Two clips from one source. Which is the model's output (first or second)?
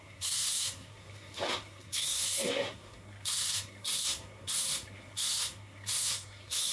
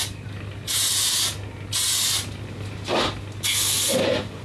first